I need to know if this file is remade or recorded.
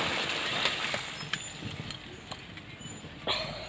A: recorded